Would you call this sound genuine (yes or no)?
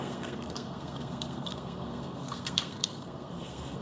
no